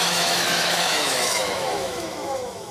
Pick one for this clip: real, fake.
fake